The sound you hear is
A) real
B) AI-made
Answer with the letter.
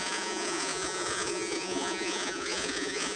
B